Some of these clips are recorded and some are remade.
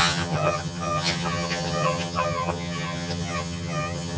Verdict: remade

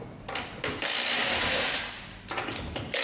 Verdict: recorded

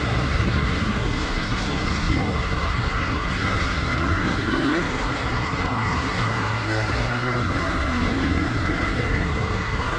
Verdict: remade